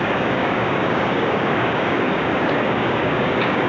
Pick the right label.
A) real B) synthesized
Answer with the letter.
B